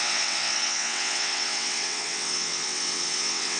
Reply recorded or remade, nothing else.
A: remade